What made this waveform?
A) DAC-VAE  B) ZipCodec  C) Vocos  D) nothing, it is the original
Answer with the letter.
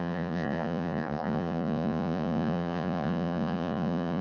C